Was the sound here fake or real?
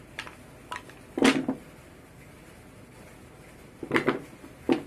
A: real